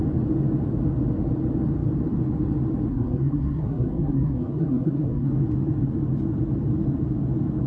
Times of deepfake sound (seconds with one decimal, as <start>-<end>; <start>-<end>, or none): 2.9-5.3